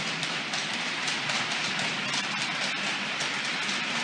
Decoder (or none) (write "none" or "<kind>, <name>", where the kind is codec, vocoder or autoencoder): none